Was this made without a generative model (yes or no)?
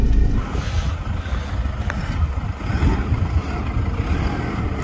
yes